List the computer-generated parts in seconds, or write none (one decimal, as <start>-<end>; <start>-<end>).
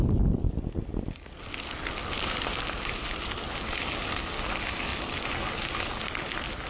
none